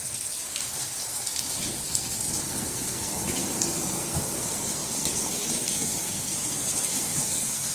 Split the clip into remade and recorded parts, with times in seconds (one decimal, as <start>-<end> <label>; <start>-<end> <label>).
0.0-7.7 remade